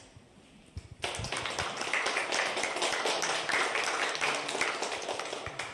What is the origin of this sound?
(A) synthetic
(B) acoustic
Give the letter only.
B